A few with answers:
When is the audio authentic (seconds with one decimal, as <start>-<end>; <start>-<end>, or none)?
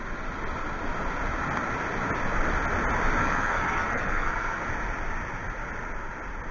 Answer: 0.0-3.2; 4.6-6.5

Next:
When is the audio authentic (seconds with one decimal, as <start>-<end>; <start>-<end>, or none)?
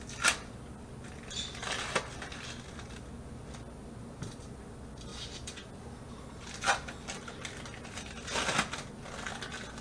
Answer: 0.0-9.8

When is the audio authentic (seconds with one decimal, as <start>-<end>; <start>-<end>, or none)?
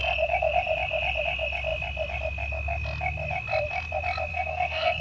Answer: 0.0-4.3